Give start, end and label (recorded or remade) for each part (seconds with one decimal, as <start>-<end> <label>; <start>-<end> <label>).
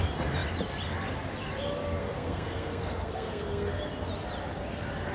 0.0-2.0 recorded; 2.0-3.8 remade; 3.8-5.1 recorded